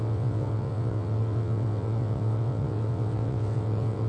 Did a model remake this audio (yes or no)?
yes